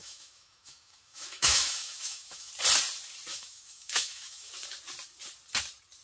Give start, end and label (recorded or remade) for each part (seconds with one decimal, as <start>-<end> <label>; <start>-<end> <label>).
0.0-2.5 remade; 2.5-3.3 recorded; 3.3-4.5 remade; 4.5-6.0 recorded